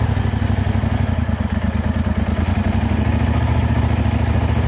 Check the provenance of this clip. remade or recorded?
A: recorded